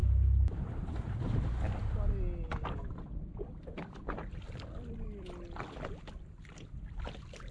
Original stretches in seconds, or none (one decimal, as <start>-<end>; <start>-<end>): 0.0-4.2; 6.1-7.5

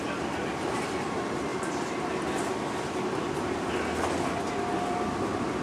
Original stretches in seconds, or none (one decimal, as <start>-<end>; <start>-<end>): 0.0-1.5; 4.5-5.6

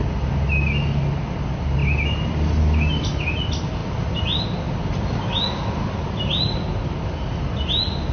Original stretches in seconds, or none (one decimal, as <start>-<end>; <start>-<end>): 0.0-8.1

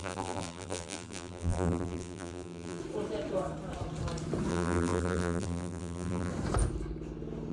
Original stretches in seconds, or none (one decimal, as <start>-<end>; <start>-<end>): 2.8-4.5; 6.3-7.5

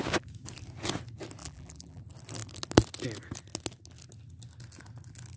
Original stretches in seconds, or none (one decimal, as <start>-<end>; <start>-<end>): 0.0-1.4; 2.0-5.4